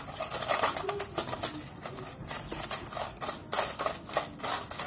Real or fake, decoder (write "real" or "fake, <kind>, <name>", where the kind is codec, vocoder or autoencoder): real